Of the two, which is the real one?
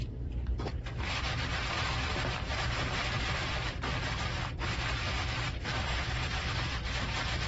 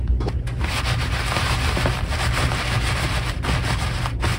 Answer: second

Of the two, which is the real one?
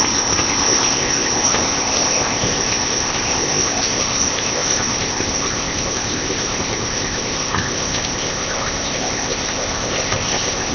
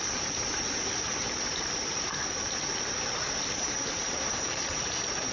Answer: second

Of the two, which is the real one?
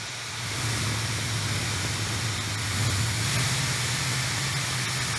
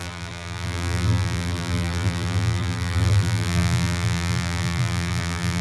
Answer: first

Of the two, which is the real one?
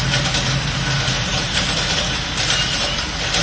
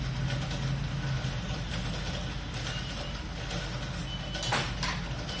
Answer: second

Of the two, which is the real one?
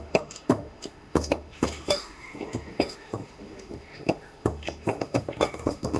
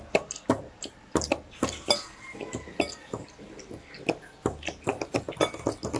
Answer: second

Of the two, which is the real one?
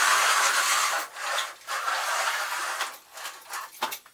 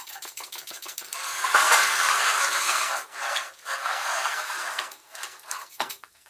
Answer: first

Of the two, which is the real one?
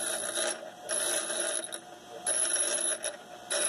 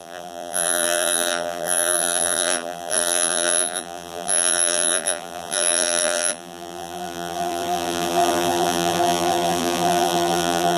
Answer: first